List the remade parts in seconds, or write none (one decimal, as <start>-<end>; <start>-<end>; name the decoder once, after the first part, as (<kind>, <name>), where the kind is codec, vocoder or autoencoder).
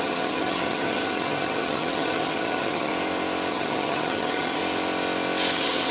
0.0-2.9 (vocoder, HiFi-GAN); 3.5-4.6; 5.5-5.9